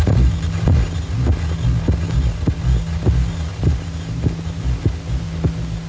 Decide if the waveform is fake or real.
real